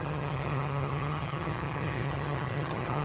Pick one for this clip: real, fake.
fake